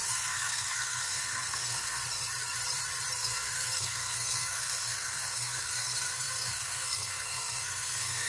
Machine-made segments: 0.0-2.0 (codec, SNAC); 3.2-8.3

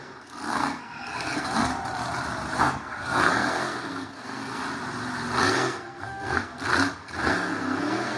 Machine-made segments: 0.0-1.7 (codec, SNAC); 2.6-4.6; 5.4-8.2